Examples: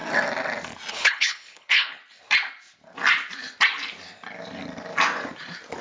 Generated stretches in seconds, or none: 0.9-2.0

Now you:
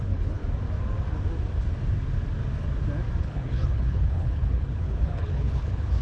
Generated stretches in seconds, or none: 0.0-0.4; 3.2-6.0

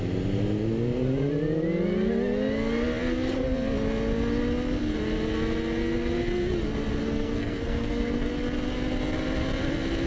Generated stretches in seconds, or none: 7.0-8.3

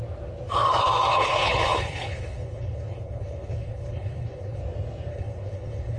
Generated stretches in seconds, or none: 1.1-4.6; 5.1-6.0